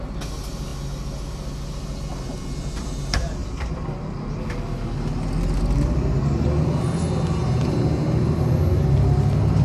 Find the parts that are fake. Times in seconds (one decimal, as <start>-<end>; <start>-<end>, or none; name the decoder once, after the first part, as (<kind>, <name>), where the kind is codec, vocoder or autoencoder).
none